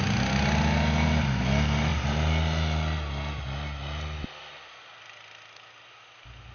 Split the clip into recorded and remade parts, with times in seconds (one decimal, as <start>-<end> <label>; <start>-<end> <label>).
0.0-6.5 recorded